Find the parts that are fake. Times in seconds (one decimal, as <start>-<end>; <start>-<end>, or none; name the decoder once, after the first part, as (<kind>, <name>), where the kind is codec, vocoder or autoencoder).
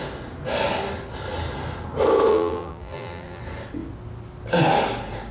2.3-3.4 (vocoder, BigVGAN v2)